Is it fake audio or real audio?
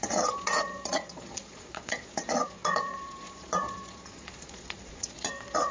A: fake